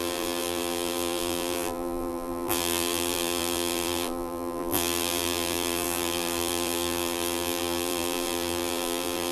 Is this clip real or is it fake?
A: fake